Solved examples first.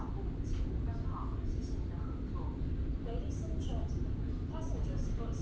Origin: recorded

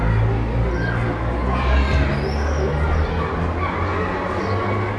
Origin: recorded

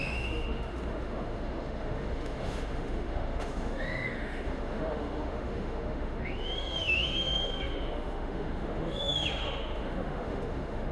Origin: remade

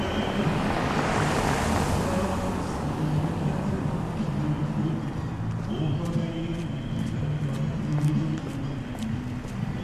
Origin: recorded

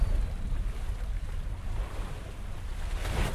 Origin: recorded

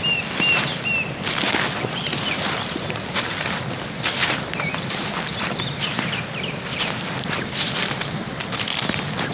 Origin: recorded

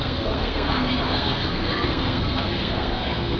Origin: remade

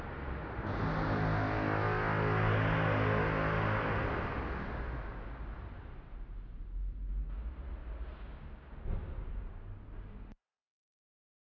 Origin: recorded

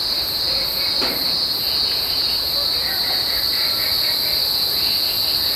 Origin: recorded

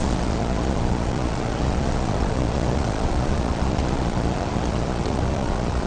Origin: remade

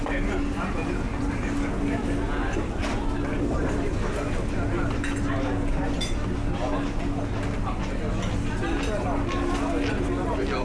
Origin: recorded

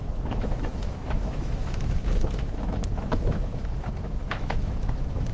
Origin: remade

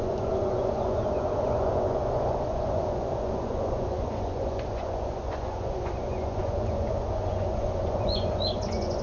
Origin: remade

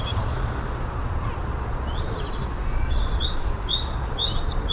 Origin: remade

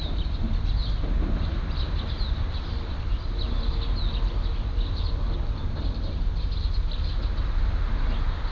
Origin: recorded